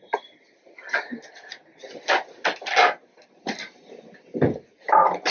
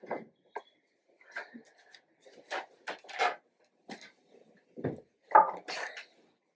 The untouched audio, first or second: first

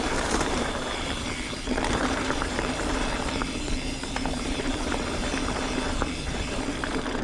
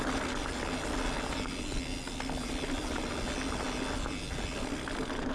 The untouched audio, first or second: second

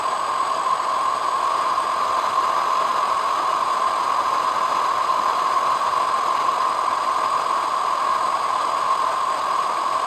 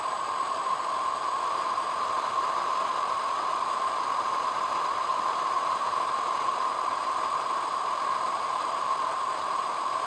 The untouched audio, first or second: first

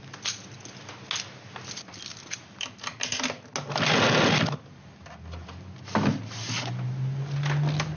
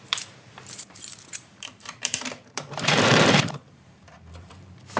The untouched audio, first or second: first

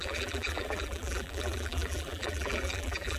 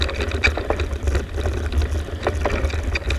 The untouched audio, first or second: second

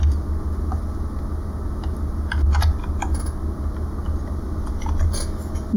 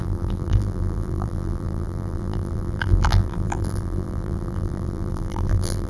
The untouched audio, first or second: first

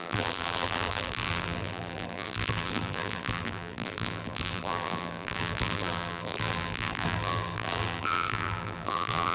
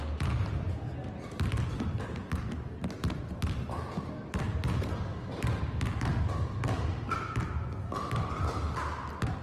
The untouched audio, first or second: second